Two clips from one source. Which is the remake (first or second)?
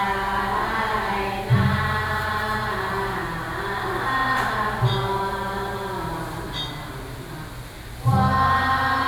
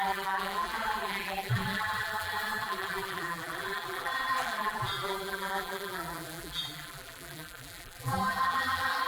second